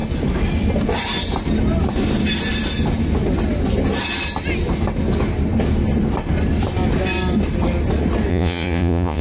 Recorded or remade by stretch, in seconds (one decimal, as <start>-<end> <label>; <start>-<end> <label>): 0.0-8.3 recorded; 8.3-9.2 remade